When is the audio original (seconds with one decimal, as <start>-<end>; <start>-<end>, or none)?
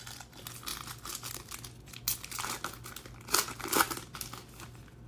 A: 0.0-5.1